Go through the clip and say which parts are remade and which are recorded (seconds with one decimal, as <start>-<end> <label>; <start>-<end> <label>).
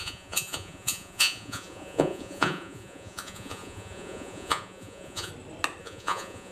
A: 0.0-5.3 remade; 5.3-5.8 recorded; 5.8-6.5 remade